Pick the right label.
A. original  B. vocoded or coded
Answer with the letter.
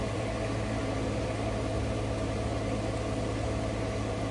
B